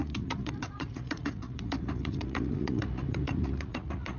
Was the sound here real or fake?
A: fake